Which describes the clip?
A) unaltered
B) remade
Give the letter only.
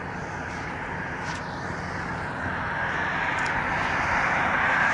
A